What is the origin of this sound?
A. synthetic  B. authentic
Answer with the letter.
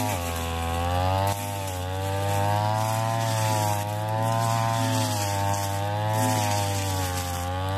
B